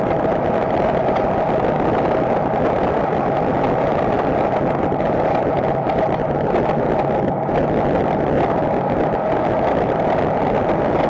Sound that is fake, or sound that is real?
real